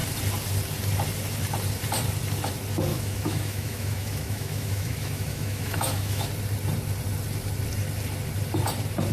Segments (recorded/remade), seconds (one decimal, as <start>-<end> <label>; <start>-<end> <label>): 0.0-2.9 recorded; 2.9-6.3 remade; 6.3-9.1 recorded